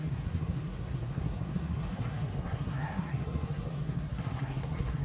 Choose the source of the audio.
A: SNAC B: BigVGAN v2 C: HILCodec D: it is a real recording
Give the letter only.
A